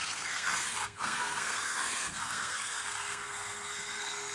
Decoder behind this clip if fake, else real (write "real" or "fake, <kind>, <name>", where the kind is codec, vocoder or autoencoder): fake, codec, SNAC